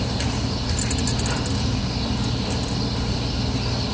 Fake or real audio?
real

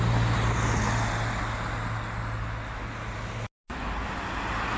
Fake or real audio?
real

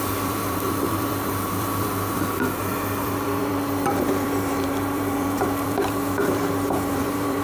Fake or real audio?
fake